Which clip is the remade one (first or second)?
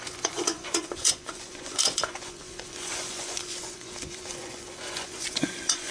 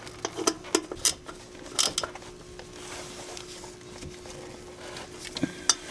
first